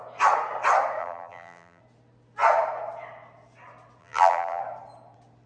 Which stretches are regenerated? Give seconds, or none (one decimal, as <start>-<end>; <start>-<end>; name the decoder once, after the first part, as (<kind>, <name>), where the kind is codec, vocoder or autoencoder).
1.0-1.8 (vocoder, BigVGAN v2); 4.0-4.6

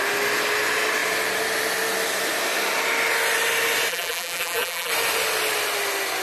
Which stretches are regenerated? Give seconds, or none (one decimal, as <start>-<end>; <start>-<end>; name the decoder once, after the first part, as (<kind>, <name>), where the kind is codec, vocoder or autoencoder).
3.9-4.9 (vocoder, BigVGAN v2)